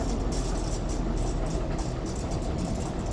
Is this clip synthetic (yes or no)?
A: no